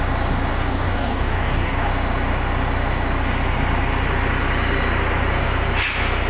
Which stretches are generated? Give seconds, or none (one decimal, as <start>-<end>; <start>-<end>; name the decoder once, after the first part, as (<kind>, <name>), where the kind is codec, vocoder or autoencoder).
0.5-1.9 (codec, DAC)